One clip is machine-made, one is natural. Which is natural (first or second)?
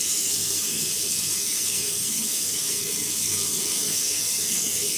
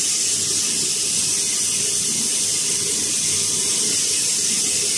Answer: second